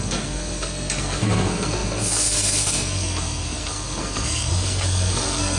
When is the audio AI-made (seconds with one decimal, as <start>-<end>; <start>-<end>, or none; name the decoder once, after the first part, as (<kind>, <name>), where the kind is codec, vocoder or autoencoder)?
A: 0.0-5.6 (codec, SNAC)